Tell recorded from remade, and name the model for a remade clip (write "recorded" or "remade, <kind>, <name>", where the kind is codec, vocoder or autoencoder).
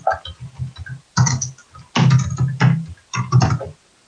recorded